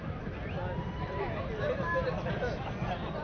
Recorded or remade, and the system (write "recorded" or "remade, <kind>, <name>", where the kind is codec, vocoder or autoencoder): recorded